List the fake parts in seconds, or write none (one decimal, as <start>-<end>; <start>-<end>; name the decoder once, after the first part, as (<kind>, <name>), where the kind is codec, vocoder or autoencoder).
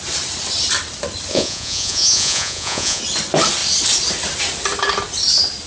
1.3-3.0 (vocoder, Vocos)